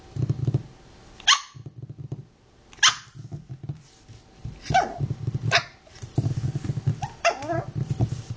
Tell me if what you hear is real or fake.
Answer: real